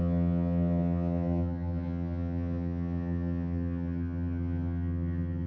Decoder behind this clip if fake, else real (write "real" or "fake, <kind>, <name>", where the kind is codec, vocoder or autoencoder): fake, vocoder, HiFi-GAN